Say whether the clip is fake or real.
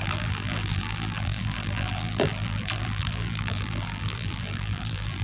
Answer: fake